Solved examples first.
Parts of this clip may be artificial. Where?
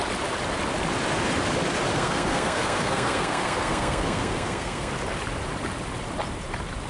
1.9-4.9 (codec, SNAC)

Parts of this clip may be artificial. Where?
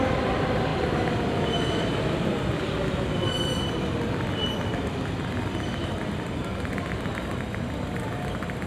none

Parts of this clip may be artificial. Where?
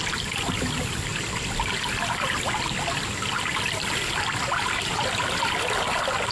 none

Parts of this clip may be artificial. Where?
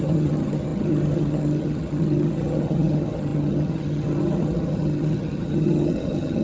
0.0-6.4 (vocoder, HiFi-GAN)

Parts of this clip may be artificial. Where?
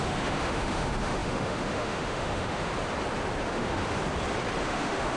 0.0-2.7 (autoencoder, DAC-VAE); 3.4-4.0; 4.6-5.2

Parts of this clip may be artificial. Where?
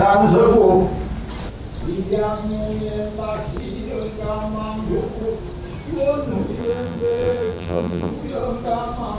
6.6-8.1 (vocoder, BigVGAN v2)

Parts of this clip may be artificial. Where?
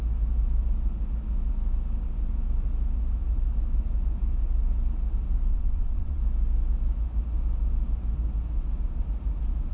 5.5-6.2 (vocoder, WaveNeXt)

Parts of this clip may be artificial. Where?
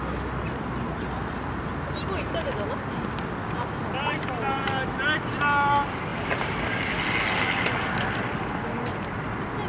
none